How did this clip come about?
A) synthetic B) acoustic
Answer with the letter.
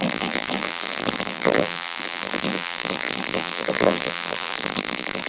A